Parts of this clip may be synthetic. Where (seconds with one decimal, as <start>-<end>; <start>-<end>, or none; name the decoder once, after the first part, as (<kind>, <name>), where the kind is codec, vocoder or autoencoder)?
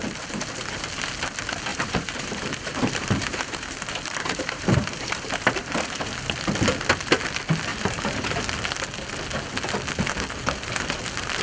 1.7-6.1 (vocoder, BigVGAN v2); 7.7-8.4